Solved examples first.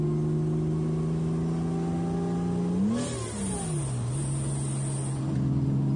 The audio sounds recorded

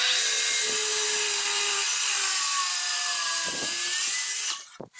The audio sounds recorded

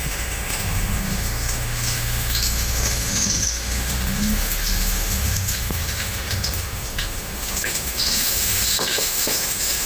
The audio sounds remade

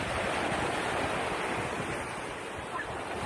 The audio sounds recorded